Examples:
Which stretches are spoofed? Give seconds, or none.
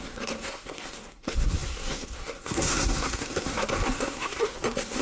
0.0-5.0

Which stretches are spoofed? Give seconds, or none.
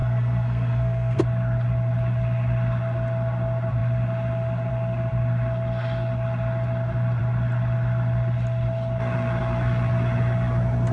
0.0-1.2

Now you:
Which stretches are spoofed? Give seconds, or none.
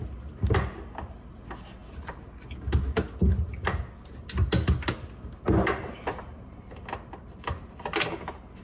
none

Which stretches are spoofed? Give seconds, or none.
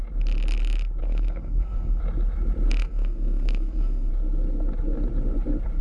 1.0-2.0; 2.8-4.1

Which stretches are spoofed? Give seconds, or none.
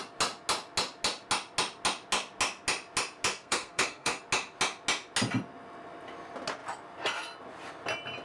3.3-4.2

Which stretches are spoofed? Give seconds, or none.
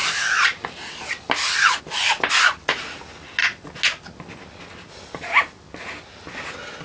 none